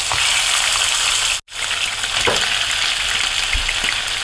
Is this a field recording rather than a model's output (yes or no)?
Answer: yes